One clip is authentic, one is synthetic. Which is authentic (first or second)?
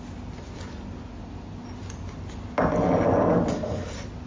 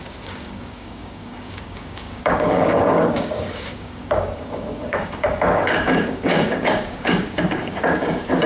first